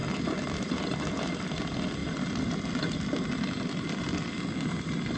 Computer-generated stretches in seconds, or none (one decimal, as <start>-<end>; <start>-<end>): none